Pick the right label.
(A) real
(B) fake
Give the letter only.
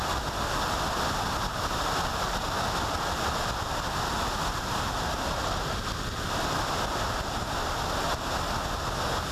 A